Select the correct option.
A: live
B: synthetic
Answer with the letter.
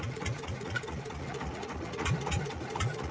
B